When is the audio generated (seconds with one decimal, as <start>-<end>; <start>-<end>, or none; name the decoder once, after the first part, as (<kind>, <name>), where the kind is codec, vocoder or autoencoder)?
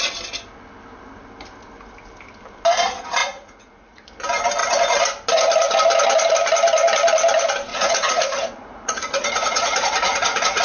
3.2-4.1 (vocoder, Vocos); 7.7-10.6